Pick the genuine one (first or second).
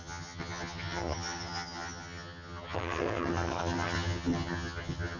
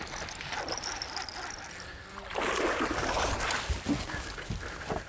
second